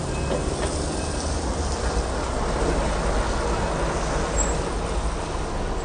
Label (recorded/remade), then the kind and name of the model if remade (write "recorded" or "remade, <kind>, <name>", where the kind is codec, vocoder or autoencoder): recorded